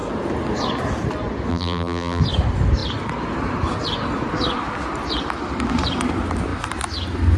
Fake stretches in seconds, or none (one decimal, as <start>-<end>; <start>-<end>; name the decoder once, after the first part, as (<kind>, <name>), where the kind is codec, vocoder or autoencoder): 1.5-2.2 (vocoder, BigVGAN v2)